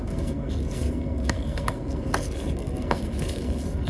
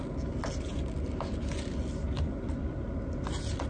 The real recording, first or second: second